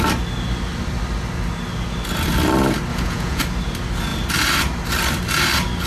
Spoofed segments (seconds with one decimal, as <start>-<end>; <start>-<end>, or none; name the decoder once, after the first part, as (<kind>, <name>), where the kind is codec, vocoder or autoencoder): 2.9-3.4 (vocoder, Vocos)